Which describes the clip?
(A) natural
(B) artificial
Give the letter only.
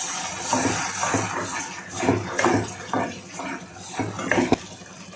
A